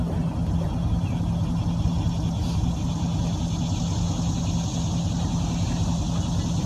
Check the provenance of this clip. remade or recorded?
recorded